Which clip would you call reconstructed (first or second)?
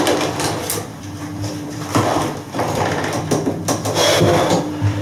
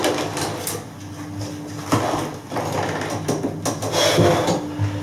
first